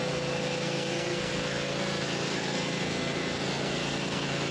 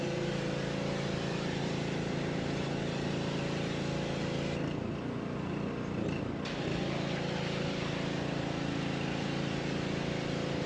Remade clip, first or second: first